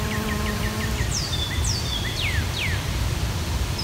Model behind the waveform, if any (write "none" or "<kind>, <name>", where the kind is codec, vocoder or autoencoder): vocoder, BigVGAN v2